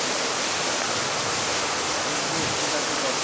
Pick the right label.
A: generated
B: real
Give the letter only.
B